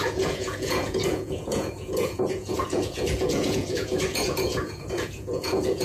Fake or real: fake